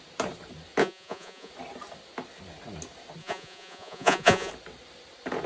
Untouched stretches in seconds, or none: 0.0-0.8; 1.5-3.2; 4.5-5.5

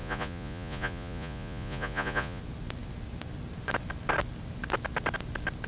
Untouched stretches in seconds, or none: 2.4-5.7